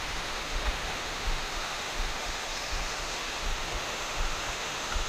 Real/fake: fake